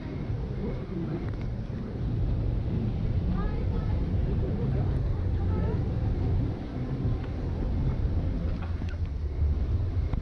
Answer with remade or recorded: recorded